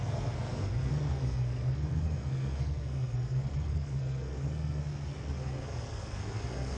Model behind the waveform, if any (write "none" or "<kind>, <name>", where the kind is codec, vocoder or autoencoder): codec, SNAC